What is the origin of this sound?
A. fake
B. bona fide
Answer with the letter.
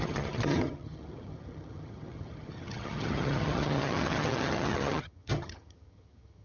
A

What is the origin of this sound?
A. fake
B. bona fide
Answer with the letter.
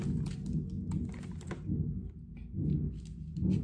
B